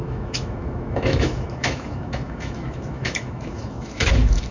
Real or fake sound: fake